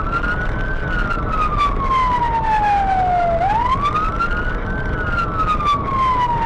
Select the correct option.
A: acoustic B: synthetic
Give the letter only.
A